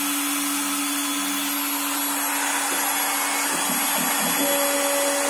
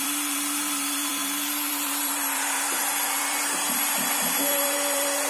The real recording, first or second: first